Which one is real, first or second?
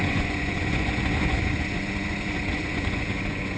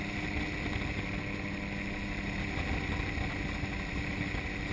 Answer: second